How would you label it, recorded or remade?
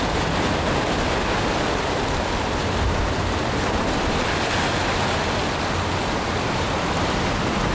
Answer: recorded